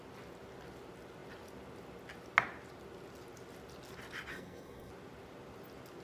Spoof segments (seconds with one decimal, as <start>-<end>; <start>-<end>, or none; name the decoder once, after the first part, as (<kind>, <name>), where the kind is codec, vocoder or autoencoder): 4.3-4.9 (codec, SNAC)